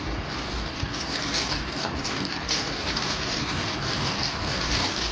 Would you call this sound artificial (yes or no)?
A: yes